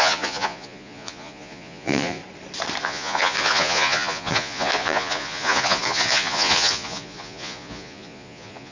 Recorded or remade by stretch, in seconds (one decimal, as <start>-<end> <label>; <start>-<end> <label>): 0.0-2.2 remade; 2.2-2.8 recorded; 2.8-8.7 remade